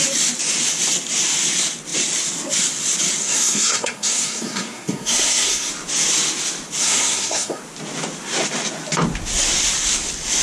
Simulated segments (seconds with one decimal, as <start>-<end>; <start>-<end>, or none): 3.2-5.7; 6.8-7.6